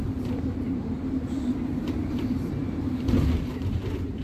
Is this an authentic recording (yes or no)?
no